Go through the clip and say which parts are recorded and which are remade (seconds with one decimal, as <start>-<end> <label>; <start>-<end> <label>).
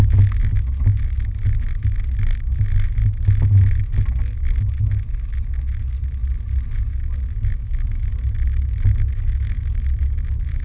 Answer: 0.0-7.5 recorded; 7.5-10.0 remade; 10.0-10.6 recorded